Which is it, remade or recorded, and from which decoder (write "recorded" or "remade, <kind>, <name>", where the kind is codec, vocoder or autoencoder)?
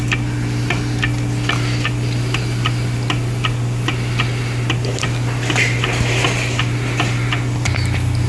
recorded